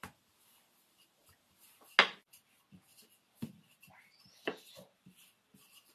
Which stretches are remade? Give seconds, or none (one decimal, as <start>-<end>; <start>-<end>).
3.5-5.9